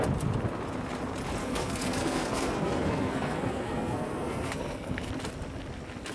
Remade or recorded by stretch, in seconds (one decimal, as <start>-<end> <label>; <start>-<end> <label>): 0.0-1.4 recorded; 1.4-5.1 remade; 5.1-6.1 recorded

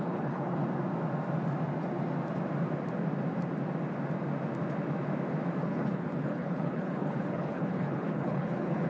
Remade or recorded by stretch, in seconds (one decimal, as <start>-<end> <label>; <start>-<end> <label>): 0.0-0.6 remade; 0.6-5.6 recorded; 5.6-8.9 remade

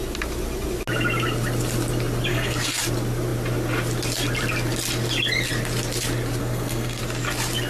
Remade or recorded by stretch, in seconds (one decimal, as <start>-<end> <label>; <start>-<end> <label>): 0.0-2.3 recorded; 2.3-2.8 remade; 2.8-6.4 recorded; 6.4-7.0 remade; 7.0-7.7 recorded

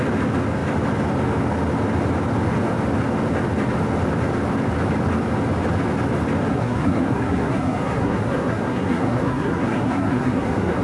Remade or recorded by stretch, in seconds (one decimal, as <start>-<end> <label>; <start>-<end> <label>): 0.0-6.5 recorded; 6.5-10.8 remade

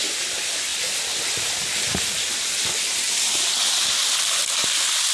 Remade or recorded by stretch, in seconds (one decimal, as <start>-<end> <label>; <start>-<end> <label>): 0.0-5.1 recorded

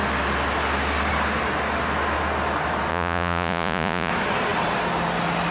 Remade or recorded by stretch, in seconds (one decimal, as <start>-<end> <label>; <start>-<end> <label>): 0.0-2.9 recorded; 2.9-4.1 remade; 4.1-5.5 recorded

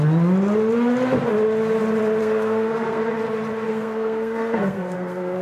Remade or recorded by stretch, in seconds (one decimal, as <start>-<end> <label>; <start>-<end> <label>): 0.0-2.2 recorded; 2.2-3.0 remade; 3.0-3.7 recorded; 3.7-5.4 remade

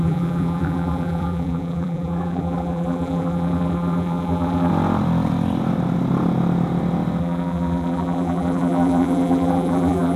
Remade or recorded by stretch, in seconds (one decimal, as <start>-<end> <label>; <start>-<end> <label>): 0.0-4.7 remade; 4.7-7.2 recorded; 7.2-10.2 remade